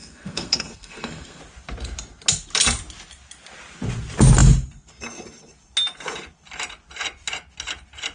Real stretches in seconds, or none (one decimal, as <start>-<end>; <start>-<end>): 1.4-8.1